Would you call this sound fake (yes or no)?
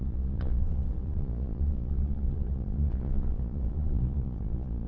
yes